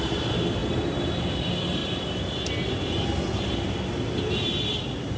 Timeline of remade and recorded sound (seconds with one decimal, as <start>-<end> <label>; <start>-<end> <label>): 0.0-0.6 remade; 0.6-1.3 recorded; 1.3-1.8 remade; 1.8-2.5 recorded; 2.5-5.2 remade